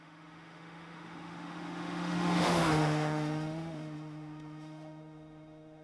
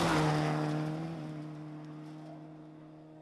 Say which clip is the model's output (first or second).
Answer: first